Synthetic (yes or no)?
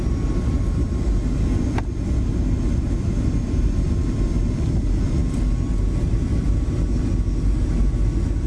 no